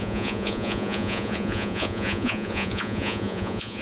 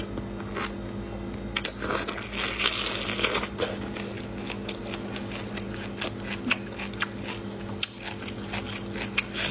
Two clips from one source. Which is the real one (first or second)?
second